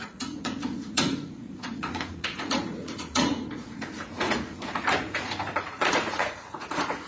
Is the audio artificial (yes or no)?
yes